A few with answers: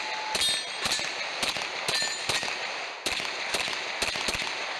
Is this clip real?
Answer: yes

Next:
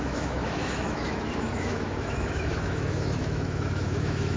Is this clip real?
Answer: no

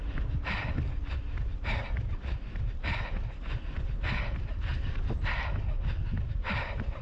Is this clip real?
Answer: yes